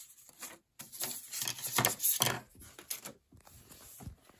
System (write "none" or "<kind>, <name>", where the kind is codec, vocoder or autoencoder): none